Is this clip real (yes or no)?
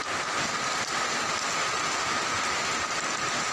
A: yes